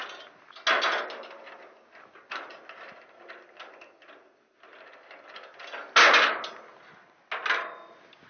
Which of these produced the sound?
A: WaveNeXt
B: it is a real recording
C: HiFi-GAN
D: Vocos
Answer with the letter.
B